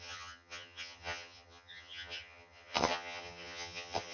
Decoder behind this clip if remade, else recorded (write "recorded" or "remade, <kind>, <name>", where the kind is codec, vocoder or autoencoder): remade, vocoder, HiFi-GAN